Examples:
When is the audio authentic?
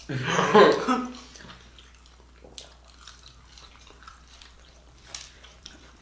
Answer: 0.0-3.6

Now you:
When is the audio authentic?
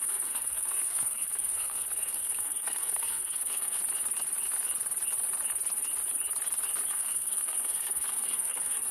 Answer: 3.8-6.9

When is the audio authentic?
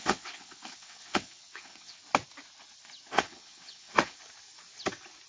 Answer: 2.0-3.1; 4.2-5.3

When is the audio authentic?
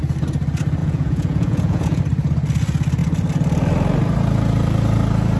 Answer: 0.0-0.8; 2.0-5.4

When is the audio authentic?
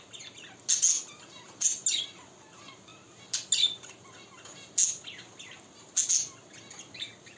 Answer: 0.0-7.4